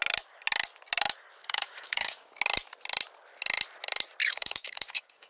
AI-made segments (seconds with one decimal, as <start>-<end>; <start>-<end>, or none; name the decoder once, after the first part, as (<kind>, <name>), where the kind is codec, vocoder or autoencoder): 1.4-2.4 (codec, DAC); 4.2-5.3